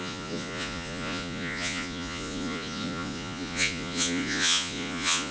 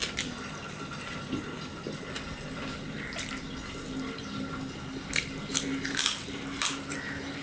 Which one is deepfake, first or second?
first